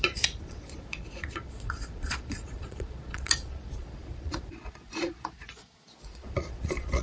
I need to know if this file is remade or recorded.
remade